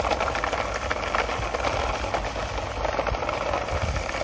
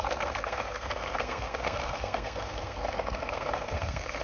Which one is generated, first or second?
second